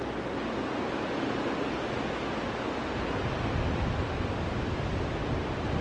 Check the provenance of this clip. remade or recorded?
recorded